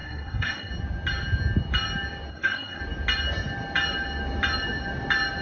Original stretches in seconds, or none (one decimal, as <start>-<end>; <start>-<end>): 0.7-2.3; 2.8-5.4